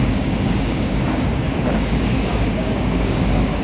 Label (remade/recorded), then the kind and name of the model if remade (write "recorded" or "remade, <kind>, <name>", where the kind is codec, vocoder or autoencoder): remade, codec, DAC